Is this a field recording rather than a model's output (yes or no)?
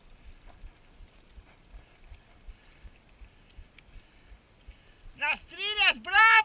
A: yes